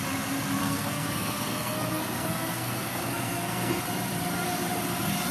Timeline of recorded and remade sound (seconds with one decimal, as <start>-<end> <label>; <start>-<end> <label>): 0.0-0.6 recorded; 0.6-3.8 remade; 3.8-5.3 recorded